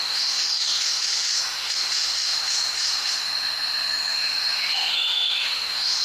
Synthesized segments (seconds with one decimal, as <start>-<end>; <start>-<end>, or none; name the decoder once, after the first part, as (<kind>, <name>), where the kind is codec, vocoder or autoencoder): 0.0-6.0 (autoencoder, DAC-VAE)